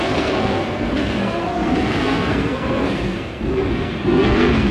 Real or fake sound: fake